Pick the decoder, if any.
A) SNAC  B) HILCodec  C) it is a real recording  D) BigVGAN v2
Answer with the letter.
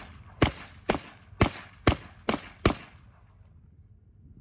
C